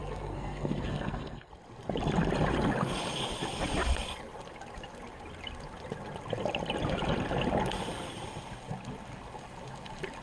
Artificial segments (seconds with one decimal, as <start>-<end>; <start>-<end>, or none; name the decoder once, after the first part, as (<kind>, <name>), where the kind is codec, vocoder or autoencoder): 0.0-1.5 (codec, SNAC)

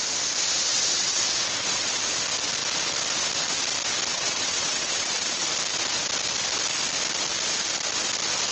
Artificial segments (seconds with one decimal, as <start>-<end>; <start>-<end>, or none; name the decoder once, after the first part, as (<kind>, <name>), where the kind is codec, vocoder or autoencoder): 0.7-2.0 (vocoder, WaveNeXt); 4.1-5.4